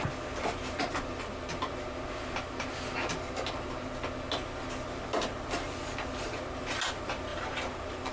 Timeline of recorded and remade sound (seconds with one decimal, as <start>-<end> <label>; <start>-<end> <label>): 0.0-7.3 recorded; 7.3-8.1 remade